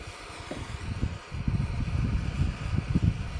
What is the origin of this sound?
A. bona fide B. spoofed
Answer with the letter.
A